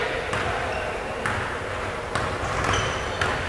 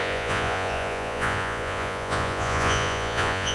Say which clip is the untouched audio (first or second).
first